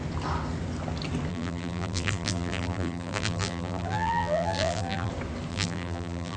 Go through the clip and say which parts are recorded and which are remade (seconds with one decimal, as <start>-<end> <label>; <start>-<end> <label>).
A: 0.0-1.3 recorded; 1.3-5.1 remade; 5.1-5.5 recorded; 5.5-6.4 remade